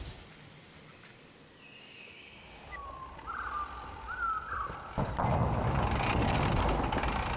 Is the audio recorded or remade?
recorded